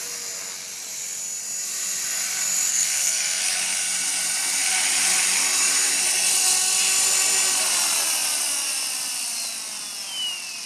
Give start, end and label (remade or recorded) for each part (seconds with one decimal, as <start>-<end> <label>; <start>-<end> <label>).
0.0-2.7 recorded; 2.7-3.4 remade; 3.4-10.7 recorded